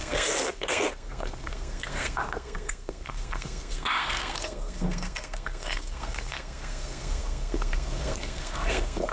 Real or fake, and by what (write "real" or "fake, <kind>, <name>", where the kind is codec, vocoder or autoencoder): fake, codec, SNAC